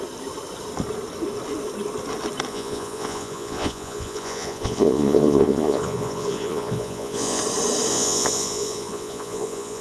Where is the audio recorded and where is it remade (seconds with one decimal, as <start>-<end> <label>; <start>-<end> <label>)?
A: 0.0-2.5 recorded; 2.5-7.4 remade; 7.4-7.9 recorded; 7.9-9.8 remade